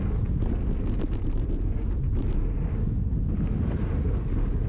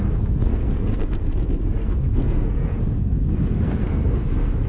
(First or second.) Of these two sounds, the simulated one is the second